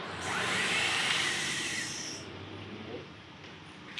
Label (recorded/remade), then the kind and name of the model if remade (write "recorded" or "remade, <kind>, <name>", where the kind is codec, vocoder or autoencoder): remade, vocoder, BigVGAN v2